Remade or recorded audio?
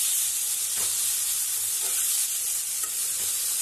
recorded